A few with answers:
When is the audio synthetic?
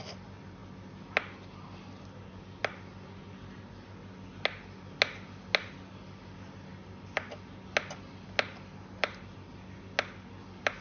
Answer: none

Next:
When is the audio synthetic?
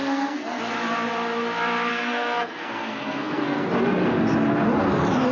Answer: 0.0-0.6; 1.9-3.7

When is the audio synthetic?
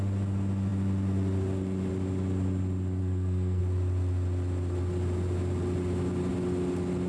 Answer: 3.0-3.6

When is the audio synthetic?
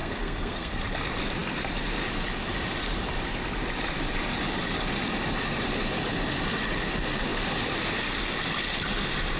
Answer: 0.0-0.8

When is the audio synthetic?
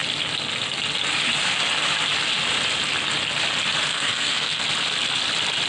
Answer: 3.9-4.6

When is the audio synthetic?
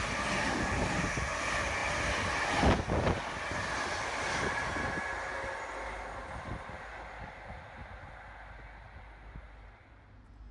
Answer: none